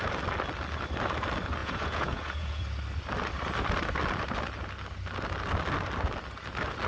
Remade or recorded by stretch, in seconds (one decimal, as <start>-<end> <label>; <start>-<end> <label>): 0.0-1.6 recorded; 1.6-2.6 remade; 2.6-6.9 recorded